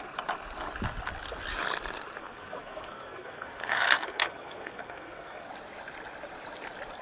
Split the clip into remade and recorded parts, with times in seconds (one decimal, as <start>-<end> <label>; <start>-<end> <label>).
0.0-2.2 recorded; 2.2-5.5 remade; 5.5-7.0 recorded